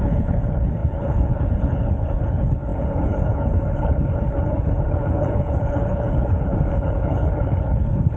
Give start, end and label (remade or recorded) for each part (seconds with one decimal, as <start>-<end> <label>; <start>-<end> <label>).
0.0-8.2 remade